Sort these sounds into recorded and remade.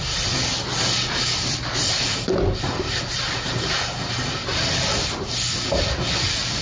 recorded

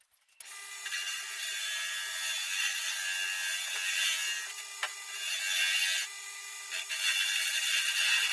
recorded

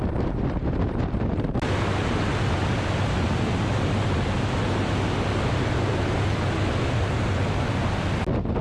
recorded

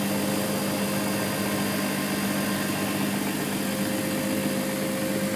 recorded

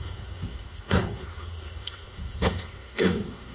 remade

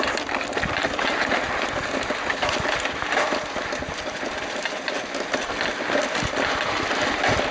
recorded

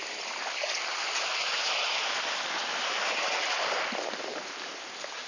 recorded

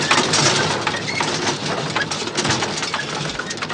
recorded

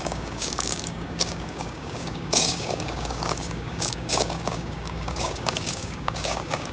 remade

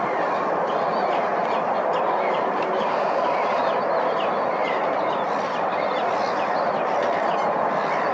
recorded